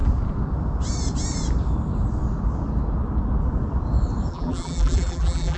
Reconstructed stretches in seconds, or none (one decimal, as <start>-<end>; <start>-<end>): 4.3-5.6